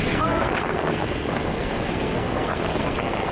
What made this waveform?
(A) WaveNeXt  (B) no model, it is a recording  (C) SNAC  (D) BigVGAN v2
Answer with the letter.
C